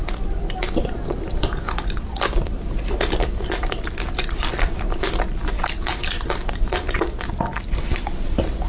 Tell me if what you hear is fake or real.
fake